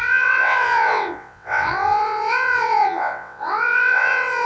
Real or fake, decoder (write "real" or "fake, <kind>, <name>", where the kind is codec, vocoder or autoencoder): fake, vocoder, WaveNeXt